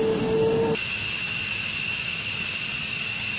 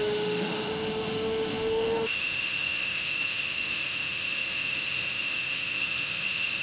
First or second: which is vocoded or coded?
second